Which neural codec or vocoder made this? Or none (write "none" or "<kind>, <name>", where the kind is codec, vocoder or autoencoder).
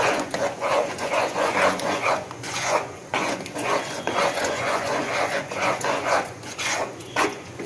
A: vocoder, Vocos